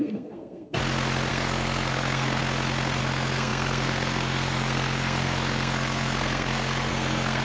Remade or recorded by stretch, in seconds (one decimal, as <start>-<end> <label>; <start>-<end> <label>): 0.0-0.8 remade; 0.8-1.3 recorded; 1.3-2.4 remade; 2.4-3.0 recorded; 3.0-7.4 remade